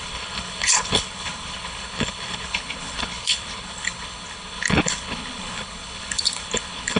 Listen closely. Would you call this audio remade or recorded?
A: remade